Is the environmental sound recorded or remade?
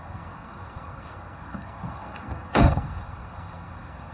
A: remade